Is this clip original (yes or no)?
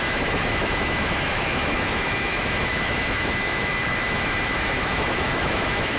no